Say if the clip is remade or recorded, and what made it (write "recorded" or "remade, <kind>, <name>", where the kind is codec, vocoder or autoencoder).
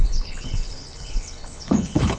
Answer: remade, codec, HILCodec